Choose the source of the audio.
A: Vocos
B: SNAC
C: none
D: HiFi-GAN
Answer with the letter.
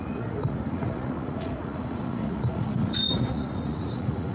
A